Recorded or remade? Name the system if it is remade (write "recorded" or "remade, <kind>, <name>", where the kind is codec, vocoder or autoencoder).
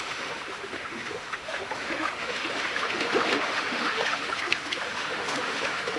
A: remade, autoencoder, DAC-VAE